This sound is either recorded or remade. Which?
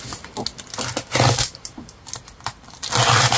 recorded